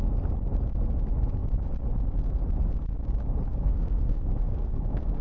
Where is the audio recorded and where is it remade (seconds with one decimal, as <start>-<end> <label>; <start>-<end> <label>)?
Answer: 0.0-3.5 recorded; 3.5-5.2 remade